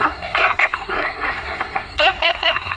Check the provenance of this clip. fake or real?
fake